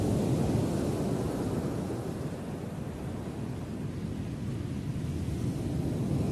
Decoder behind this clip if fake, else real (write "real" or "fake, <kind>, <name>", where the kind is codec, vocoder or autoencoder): real